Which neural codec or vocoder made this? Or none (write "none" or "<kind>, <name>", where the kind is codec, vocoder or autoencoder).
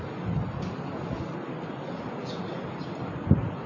none